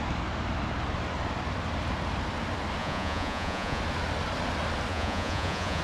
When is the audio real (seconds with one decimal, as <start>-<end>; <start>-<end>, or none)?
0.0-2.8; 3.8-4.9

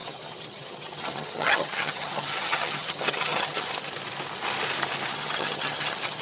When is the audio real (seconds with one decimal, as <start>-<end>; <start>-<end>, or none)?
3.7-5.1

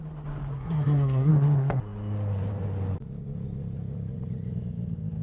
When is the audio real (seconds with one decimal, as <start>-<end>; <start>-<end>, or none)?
0.0-0.5; 1.3-5.2

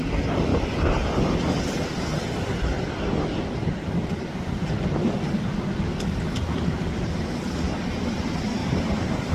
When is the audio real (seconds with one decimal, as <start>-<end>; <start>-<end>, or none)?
0.0-0.5; 3.0-9.3

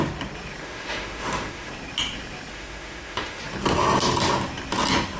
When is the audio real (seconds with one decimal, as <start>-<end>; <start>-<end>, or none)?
0.0-0.6; 1.7-2.5; 3.4-5.2

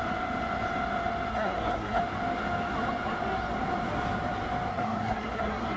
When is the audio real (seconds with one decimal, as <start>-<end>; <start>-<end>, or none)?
0.0-1.3; 2.0-4.7

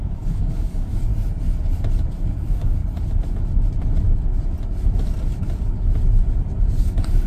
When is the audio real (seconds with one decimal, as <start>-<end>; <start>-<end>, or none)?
1.1-2.2; 2.8-6.8

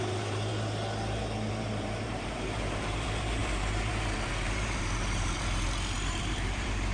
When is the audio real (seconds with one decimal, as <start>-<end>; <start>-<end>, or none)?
0.5-1.5